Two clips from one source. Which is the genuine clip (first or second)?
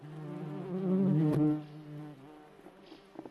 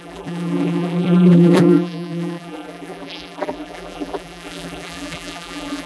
first